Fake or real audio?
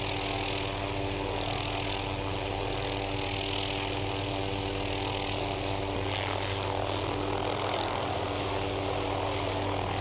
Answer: real